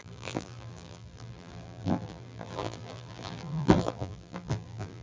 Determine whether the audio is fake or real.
fake